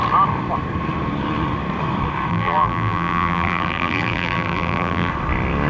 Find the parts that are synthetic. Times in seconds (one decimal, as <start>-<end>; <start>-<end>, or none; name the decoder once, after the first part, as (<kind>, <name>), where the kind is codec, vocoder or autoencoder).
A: 2.3-5.1 (vocoder, BigVGAN v2)